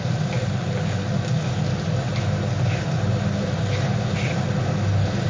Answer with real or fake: real